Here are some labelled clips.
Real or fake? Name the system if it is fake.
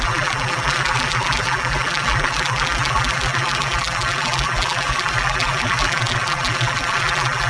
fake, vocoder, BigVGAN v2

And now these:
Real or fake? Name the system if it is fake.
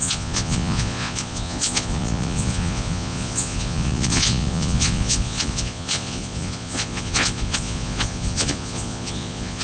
fake, vocoder, Vocos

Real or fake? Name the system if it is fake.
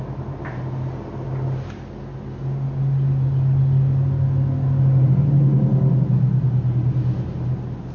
real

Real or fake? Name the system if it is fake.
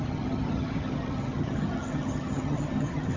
fake, vocoder, HiFi-GAN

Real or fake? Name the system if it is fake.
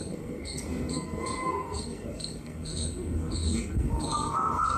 fake, codec, SNAC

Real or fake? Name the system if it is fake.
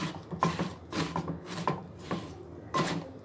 fake, vocoder, BigVGAN v2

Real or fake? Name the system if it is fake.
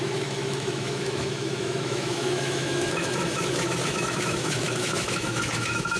fake, autoencoder, DAC-VAE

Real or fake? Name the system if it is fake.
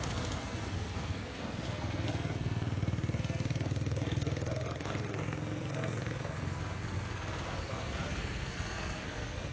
fake, codec, SNAC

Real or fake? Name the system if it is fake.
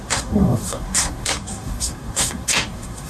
fake, codec, SNAC